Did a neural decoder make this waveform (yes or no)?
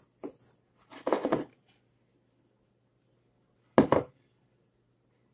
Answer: no